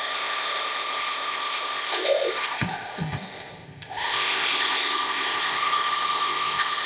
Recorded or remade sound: remade